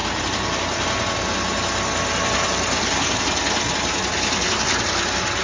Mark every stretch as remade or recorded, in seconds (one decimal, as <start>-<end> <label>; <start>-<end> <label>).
0.0-5.4 recorded